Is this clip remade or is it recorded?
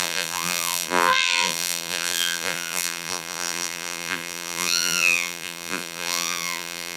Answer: remade